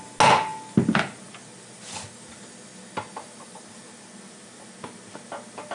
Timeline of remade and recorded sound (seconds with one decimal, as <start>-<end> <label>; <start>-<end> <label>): 0.0-5.7 recorded